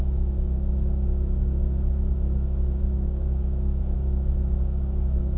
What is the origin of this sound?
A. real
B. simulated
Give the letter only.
B